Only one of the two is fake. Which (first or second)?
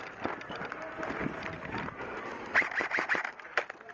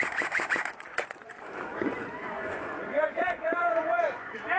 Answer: second